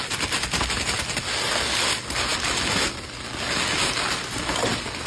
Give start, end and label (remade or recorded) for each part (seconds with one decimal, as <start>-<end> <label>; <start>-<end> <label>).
0.0-5.1 recorded